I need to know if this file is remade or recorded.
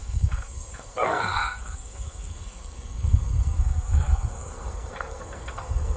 remade